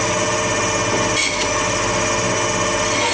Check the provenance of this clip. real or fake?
real